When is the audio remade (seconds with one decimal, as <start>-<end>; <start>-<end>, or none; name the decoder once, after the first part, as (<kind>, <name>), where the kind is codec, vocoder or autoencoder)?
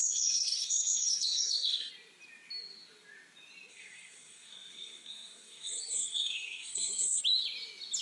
0.0-1.9 (codec, SNAC); 3.7-7.2